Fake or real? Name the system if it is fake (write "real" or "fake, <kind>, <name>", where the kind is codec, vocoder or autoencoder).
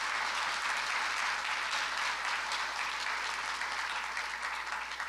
real